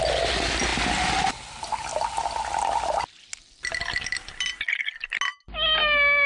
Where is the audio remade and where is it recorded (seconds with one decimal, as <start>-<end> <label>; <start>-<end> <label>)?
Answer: 0.0-6.3 recorded